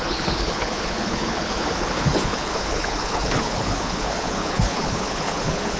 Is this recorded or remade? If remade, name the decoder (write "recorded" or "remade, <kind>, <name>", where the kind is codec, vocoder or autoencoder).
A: remade, codec, HILCodec